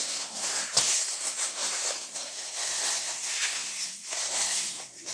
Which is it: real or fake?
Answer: fake